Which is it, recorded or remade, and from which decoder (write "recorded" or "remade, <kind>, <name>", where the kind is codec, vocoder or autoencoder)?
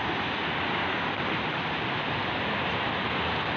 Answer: recorded